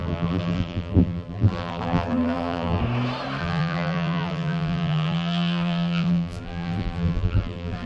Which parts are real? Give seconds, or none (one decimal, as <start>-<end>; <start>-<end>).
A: 2.8-3.4

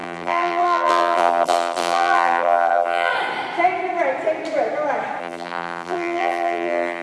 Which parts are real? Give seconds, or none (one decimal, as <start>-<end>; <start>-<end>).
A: 3.1-5.2

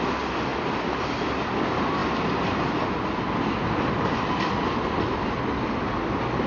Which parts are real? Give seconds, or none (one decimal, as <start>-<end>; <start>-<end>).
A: 0.0-6.5

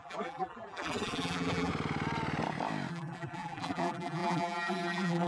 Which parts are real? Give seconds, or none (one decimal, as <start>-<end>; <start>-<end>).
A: 1.7-2.9

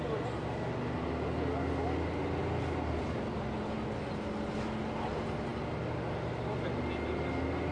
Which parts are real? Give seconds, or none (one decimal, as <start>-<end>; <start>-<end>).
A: 0.0-7.7

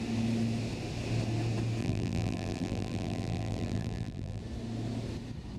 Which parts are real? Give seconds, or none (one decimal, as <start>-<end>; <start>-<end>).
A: 0.0-1.8; 4.4-5.6

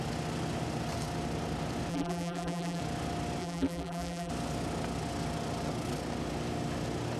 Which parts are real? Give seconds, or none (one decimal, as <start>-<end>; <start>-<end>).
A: 0.0-1.9; 2.8-3.4; 4.3-7.2